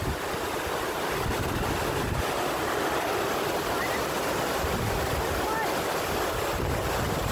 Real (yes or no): yes